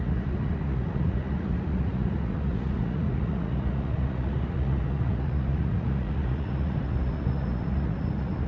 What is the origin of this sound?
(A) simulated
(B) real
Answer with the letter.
A